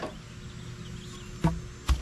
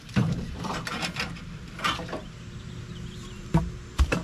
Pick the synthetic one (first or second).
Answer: second